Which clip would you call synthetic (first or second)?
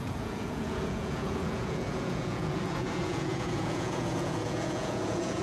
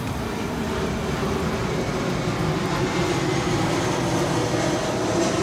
first